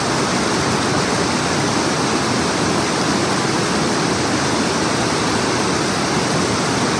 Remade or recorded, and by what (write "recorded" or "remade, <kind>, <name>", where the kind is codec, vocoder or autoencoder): remade, vocoder, BigVGAN v2